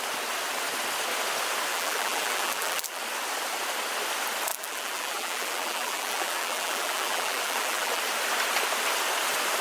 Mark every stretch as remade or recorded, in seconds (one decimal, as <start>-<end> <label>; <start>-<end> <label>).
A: 0.0-1.7 recorded; 1.7-3.0 remade; 3.0-4.5 recorded; 4.5-8.0 remade; 8.0-9.6 recorded